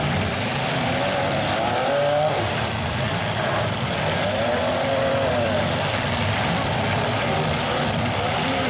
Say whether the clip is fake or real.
fake